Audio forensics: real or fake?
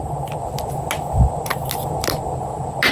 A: real